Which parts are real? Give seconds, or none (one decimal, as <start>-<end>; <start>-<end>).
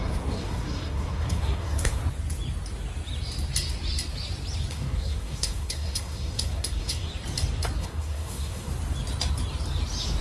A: 2.0-4.7; 7.1-7.8; 8.7-10.2